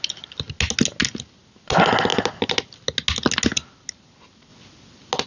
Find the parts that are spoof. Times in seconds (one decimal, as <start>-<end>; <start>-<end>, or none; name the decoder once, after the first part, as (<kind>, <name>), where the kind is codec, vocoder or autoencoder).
none